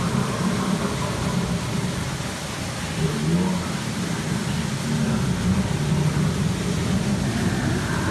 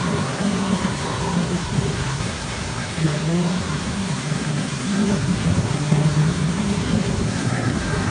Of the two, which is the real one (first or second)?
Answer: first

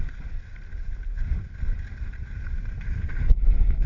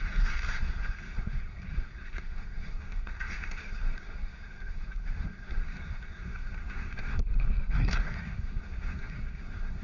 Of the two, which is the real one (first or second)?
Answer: first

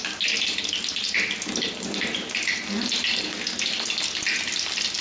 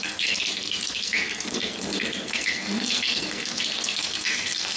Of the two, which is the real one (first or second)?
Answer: first